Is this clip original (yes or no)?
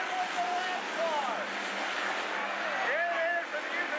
yes